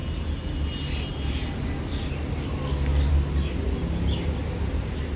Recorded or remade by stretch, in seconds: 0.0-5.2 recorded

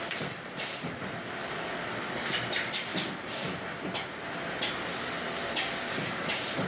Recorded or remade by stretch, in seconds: 0.0-2.9 remade; 2.9-6.0 recorded; 6.0-6.7 remade

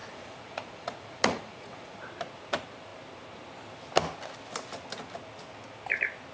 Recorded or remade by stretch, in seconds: 0.0-2.0 remade; 2.0-6.3 recorded

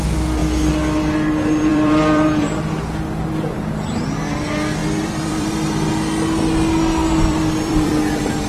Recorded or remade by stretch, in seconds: 0.0-1.7 recorded; 1.7-2.3 remade; 2.3-4.8 recorded; 4.8-5.9 remade; 5.9-7.0 recorded; 7.0-7.9 remade; 7.9-8.5 recorded

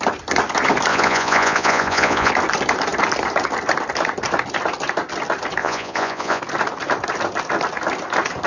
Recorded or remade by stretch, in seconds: 0.0-0.9 recorded; 0.9-2.3 remade; 2.3-5.6 recorded; 5.6-6.4 remade; 6.4-8.5 recorded

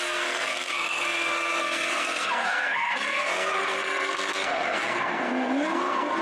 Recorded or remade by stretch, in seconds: 0.0-6.2 remade

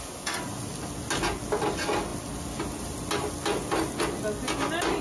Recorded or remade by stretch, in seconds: 0.0-5.0 recorded

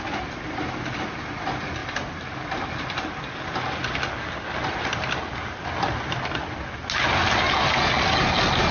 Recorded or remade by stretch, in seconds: 0.0-8.7 recorded